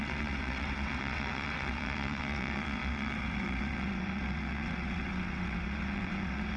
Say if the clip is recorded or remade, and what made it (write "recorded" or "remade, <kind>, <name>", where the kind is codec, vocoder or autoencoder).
remade, vocoder, WaveNeXt